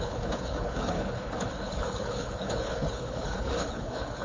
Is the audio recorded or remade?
remade